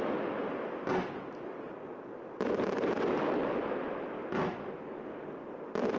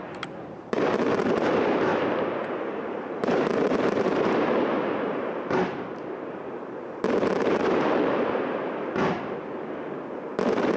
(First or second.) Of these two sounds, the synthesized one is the second